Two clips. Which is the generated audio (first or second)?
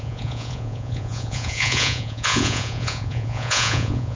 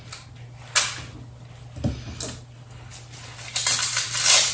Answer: first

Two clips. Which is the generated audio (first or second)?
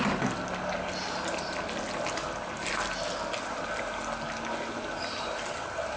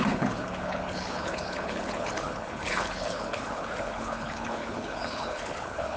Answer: second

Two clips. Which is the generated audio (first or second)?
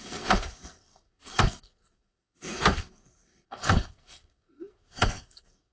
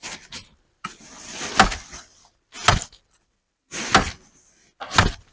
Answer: first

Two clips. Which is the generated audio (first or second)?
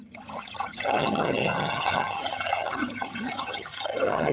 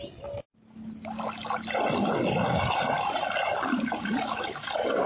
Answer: first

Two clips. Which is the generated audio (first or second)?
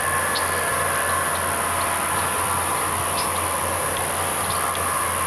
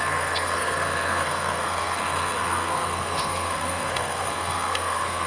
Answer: second